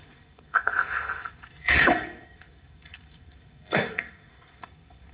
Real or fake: fake